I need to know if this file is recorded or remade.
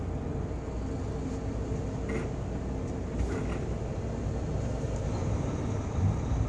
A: recorded